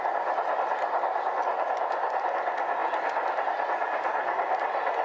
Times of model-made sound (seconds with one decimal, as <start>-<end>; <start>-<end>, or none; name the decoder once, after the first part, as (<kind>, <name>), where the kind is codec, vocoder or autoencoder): none